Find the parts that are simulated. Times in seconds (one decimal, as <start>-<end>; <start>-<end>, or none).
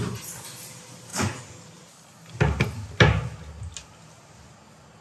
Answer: none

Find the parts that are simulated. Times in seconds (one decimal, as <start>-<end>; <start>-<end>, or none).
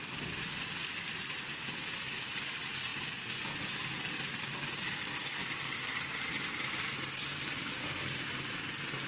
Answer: none